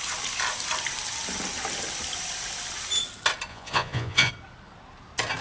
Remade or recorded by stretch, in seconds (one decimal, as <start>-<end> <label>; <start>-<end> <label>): 0.0-3.5 recorded; 3.5-4.3 remade; 4.3-5.4 recorded